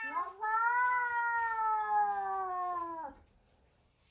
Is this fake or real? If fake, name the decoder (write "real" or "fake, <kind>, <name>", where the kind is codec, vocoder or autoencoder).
real